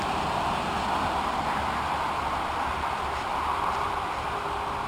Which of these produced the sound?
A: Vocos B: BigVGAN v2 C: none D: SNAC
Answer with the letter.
C